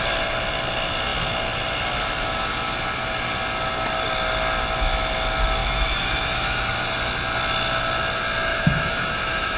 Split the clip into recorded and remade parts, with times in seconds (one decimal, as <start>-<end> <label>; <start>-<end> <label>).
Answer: 0.0-5.6 recorded; 5.6-6.7 remade; 6.7-8.5 recorded; 8.5-9.6 remade